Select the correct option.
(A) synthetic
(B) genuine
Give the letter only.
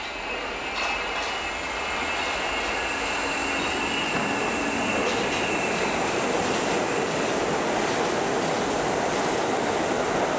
B